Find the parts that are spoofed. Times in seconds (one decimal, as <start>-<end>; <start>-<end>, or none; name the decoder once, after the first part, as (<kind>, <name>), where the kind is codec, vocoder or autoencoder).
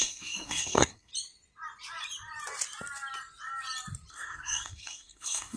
0.0-1.1 (codec, SNAC); 4.1-5.6